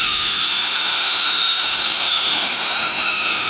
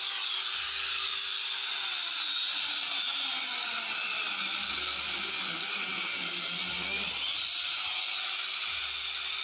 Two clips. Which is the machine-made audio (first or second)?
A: first